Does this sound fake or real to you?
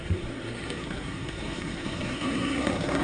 fake